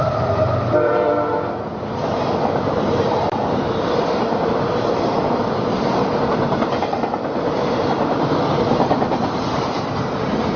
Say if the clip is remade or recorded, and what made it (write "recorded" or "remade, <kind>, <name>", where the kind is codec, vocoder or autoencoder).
remade, vocoder, BigVGAN v2